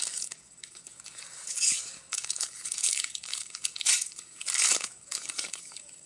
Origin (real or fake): fake